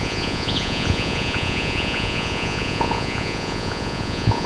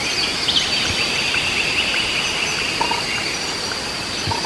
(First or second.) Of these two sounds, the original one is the second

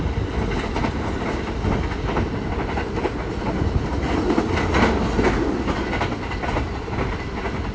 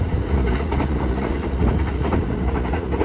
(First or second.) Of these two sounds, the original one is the first